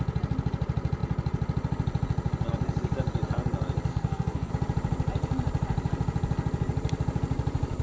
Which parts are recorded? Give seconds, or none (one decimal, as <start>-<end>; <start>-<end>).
0.0-3.9; 4.5-7.8